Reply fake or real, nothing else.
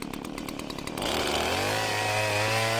real